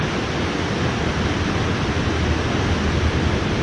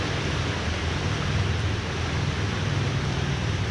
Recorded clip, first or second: first